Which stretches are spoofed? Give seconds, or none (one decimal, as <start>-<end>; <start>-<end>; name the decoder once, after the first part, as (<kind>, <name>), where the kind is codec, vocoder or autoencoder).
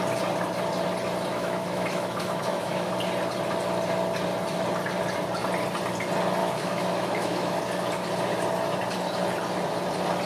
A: 1.3-2.9 (autoencoder, DAC-VAE); 6.4-7.6